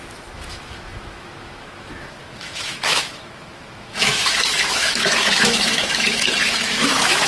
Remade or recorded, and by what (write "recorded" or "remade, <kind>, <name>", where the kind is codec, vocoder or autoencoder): remade, autoencoder, DAC-VAE